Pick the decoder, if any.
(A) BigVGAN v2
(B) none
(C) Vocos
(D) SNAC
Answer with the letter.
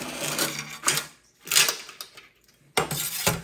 B